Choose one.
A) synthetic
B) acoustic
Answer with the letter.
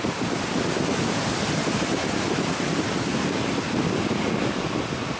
B